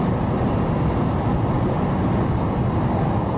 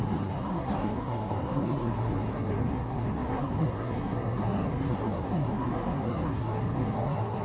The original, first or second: first